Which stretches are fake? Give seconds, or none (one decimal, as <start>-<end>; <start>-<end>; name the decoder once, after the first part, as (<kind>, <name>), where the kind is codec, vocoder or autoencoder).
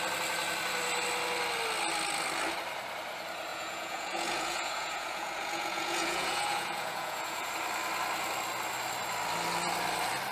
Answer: 3.5-7.5 (vocoder, Vocos)